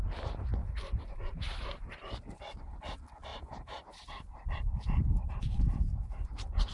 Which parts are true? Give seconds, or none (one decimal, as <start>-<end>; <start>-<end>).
0.0-0.6; 2.4-3.3